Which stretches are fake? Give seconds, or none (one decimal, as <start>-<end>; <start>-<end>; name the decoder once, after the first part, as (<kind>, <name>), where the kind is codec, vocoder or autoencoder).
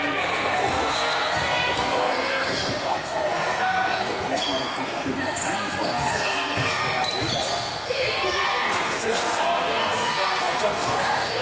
0.0-6.8 (codec, SNAC); 7.4-11.4